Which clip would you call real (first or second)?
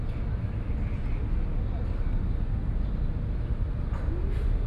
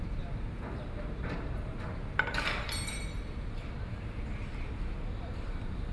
first